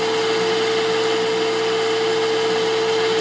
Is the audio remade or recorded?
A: recorded